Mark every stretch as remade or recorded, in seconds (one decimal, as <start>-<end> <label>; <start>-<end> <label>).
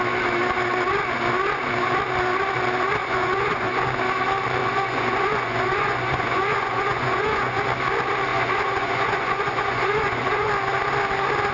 0.0-3.0 recorded; 3.0-3.8 remade; 3.8-4.6 recorded; 4.6-7.6 remade; 7.6-8.3 recorded; 8.3-10.5 remade; 10.5-11.5 recorded